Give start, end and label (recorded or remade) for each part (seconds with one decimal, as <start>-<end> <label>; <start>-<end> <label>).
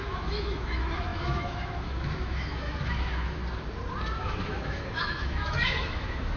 0.0-3.4 remade; 3.4-4.2 recorded; 4.2-6.4 remade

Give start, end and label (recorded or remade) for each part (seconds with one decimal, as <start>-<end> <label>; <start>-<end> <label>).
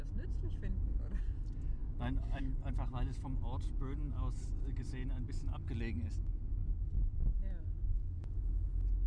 0.0-1.8 recorded; 1.8-2.4 remade; 2.4-9.1 recorded